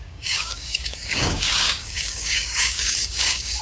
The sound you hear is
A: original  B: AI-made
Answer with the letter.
B